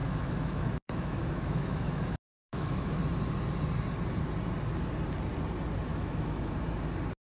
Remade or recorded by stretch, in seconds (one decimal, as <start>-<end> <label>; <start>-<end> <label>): 0.0-3.0 remade; 3.0-5.9 recorded; 5.9-6.5 remade; 6.5-7.2 recorded